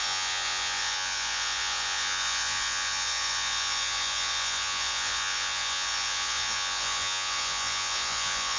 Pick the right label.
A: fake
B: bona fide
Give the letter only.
A